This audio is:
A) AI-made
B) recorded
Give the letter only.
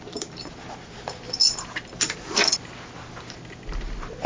B